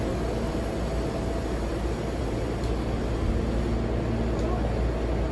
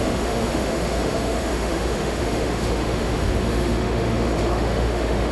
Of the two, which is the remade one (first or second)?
second